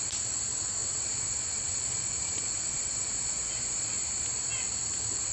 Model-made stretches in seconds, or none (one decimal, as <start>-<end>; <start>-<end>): 0.8-4.0